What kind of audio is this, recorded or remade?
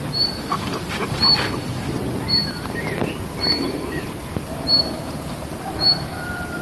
remade